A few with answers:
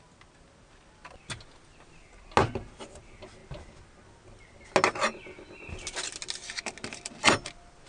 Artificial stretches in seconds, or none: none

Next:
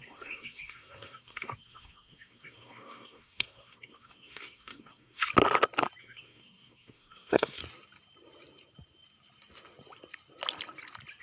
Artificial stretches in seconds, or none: 0.0-5.3 (codec, SNAC); 6.0-7.6

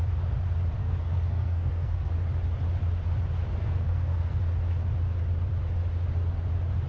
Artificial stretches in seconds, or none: 0.8-2.1 (codec, SNAC); 3.6-4.4

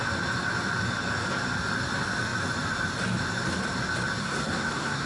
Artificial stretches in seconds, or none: 4.2-5.1 (codec, SNAC)